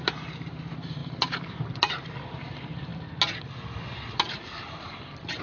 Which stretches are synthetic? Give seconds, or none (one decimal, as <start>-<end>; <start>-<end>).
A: 0.0-2.9; 3.9-5.4